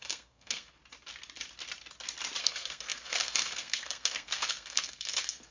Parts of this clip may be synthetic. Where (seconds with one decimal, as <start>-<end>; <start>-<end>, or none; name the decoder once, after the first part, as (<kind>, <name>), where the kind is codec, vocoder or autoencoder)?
0.0-0.8 (codec, SNAC); 2.4-5.5